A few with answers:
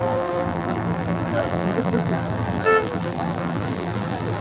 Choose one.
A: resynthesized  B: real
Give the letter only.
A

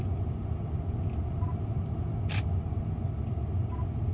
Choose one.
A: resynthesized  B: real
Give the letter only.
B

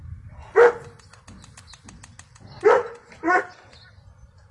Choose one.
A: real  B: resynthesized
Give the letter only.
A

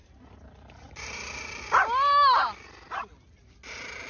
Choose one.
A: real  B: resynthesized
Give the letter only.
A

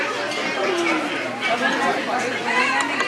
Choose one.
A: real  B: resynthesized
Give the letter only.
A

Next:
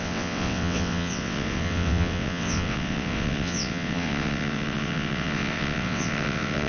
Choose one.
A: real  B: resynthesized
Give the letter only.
B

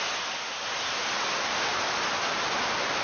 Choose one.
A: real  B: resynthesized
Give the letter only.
A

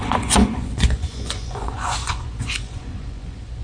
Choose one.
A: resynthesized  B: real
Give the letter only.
A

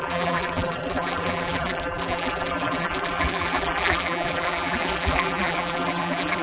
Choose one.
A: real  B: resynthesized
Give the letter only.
B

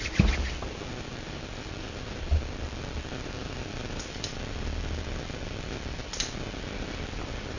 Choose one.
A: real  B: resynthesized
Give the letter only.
A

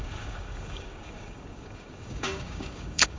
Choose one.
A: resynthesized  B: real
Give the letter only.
A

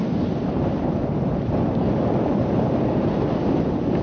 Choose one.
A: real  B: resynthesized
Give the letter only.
A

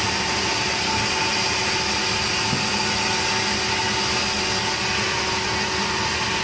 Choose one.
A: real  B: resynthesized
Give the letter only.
A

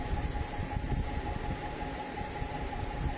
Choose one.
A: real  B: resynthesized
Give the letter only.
A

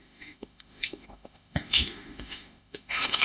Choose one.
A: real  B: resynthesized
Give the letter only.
B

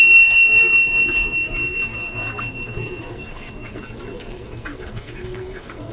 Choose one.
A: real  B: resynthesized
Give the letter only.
B